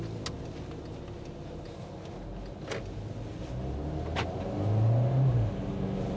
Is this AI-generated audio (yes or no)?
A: no